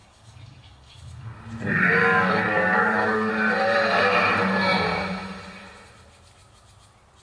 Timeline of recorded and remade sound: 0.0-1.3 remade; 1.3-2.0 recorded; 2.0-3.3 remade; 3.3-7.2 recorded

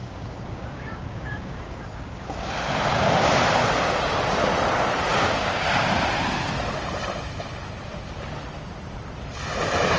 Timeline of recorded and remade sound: 0.0-2.5 remade; 2.5-2.9 recorded; 2.9-3.4 remade; 3.4-5.1 recorded; 5.1-5.9 remade; 5.9-10.0 recorded

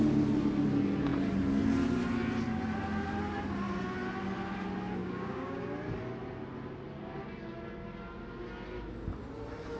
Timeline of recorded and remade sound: 0.0-5.0 recorded; 5.0-5.6 remade; 5.6-9.8 recorded

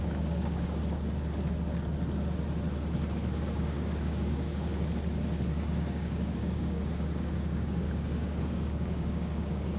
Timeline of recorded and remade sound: 0.0-0.8 remade; 0.8-3.6 recorded; 3.6-4.7 remade; 4.7-5.5 recorded; 5.5-9.8 remade

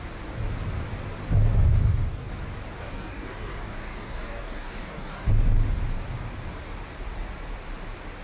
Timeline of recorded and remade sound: 0.0-1.8 recorded; 1.8-2.3 remade; 2.3-2.8 recorded; 2.8-5.3 remade; 5.3-8.2 recorded

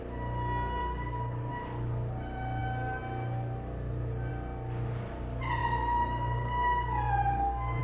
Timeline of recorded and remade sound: 0.0-0.8 recorded; 0.8-1.5 remade; 1.5-5.6 recorded; 5.6-7.8 remade

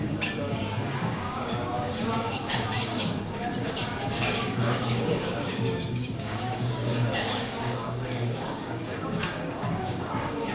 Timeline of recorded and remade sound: 0.0-10.5 remade

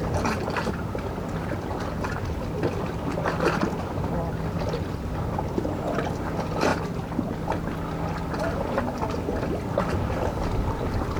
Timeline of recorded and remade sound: 0.0-11.2 recorded